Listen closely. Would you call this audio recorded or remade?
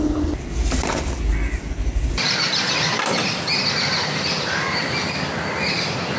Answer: recorded